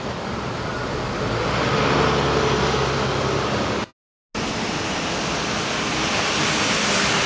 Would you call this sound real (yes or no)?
yes